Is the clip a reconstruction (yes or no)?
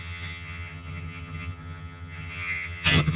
yes